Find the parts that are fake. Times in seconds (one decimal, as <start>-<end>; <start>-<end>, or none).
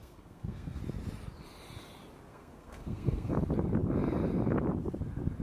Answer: 0.0-0.8; 2.3-3.3